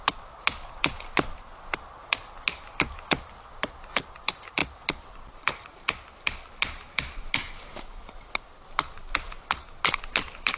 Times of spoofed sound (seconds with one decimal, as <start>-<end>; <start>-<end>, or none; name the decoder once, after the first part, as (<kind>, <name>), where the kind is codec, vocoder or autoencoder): none